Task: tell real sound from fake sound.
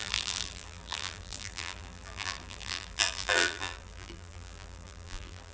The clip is fake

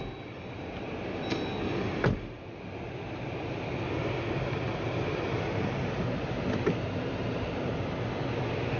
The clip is real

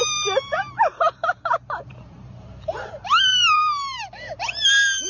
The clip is fake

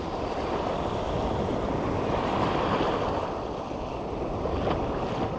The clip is real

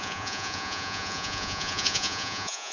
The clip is fake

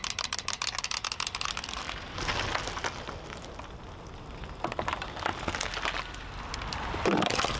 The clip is real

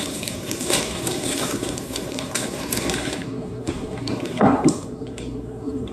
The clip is fake